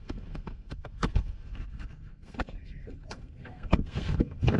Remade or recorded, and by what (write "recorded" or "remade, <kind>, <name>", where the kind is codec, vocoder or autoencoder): remade, codec, SNAC